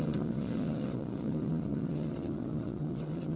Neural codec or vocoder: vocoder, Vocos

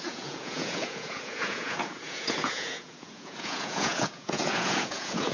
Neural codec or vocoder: vocoder, Vocos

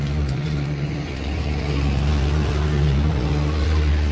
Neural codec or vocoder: vocoder, Vocos